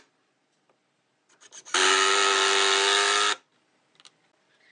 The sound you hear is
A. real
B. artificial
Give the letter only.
A